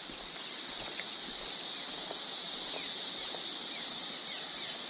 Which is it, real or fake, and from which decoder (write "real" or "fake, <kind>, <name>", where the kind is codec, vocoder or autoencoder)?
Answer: fake, vocoder, BigVGAN v2